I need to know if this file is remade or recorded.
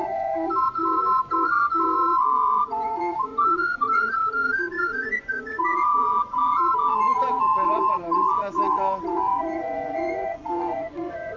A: remade